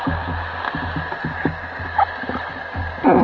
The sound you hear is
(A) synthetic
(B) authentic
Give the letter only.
B